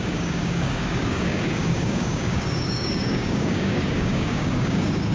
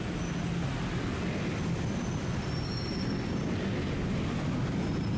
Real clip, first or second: second